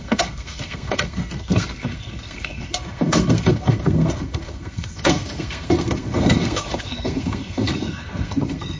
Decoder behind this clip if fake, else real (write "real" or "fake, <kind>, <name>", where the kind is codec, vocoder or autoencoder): fake, codec, SNAC